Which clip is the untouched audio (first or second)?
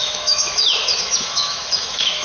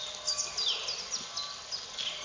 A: second